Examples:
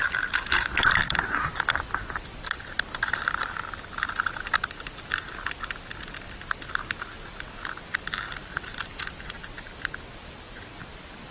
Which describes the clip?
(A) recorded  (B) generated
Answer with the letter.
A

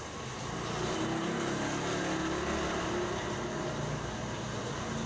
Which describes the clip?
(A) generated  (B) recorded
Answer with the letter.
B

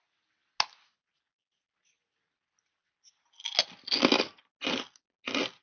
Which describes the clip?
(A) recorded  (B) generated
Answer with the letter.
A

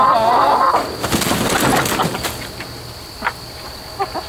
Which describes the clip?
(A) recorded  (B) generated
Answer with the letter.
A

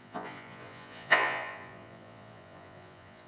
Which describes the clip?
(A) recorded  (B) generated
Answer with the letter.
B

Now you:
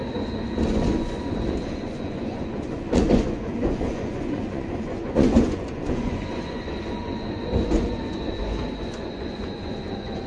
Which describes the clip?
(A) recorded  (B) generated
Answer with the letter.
B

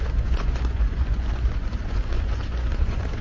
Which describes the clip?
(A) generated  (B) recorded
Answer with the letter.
A